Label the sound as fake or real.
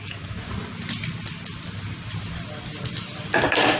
real